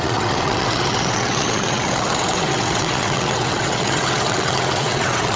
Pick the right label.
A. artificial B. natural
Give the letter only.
A